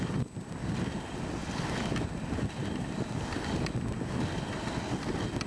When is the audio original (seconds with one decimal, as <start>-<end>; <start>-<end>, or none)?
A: 0.0-5.5